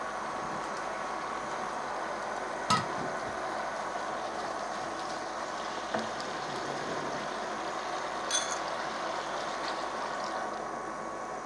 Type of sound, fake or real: real